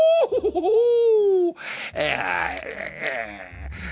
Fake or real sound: real